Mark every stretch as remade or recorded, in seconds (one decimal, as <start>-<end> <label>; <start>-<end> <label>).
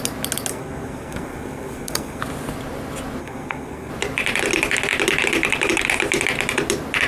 0.0-0.5 recorded; 0.5-2.2 remade; 2.2-3.2 recorded; 3.2-3.9 remade; 3.9-7.1 recorded